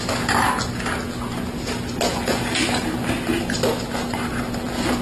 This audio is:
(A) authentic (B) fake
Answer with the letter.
A